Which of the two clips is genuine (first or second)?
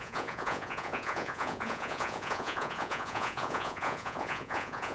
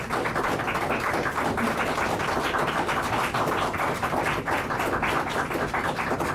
second